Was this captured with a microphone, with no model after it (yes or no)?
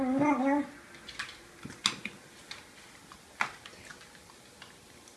yes